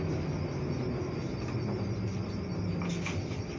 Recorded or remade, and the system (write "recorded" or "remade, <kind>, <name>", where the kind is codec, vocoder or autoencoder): recorded